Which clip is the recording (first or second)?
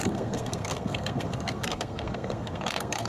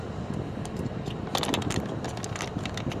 second